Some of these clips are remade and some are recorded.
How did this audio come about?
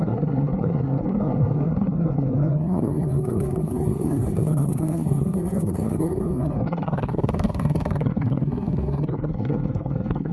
remade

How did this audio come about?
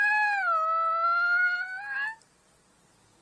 recorded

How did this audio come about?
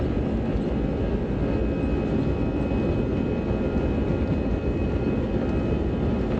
recorded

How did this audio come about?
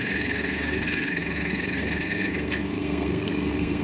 remade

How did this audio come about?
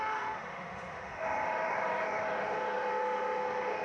remade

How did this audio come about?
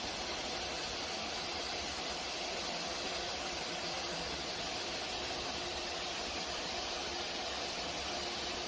recorded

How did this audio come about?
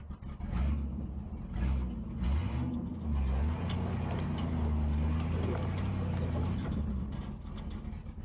recorded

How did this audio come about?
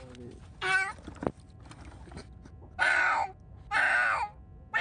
recorded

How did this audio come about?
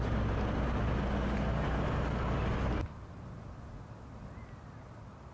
recorded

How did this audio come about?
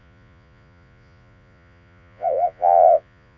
remade